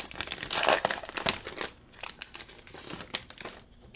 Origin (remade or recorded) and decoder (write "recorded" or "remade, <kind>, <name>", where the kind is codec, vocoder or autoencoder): recorded